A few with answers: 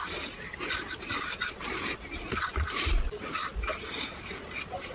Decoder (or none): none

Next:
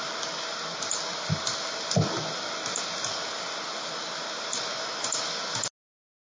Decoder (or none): none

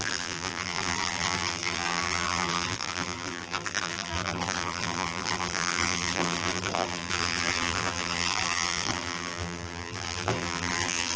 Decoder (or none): vocoder, BigVGAN v2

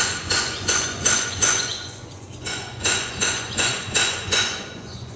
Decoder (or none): vocoder, Vocos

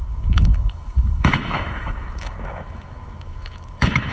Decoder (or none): autoencoder, DAC-VAE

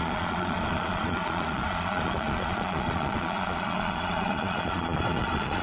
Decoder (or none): vocoder, Vocos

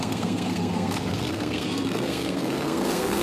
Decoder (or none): codec, SNAC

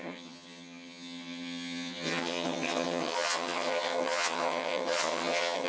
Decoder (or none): vocoder, HiFi-GAN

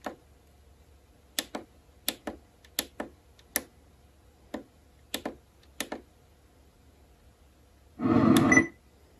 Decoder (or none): none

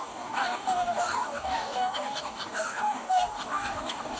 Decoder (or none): codec, DAC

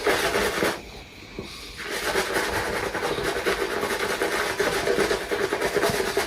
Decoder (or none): none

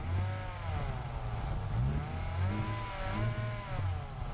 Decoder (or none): none